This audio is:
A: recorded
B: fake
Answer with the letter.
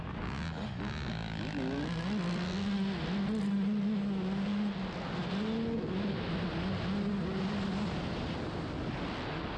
A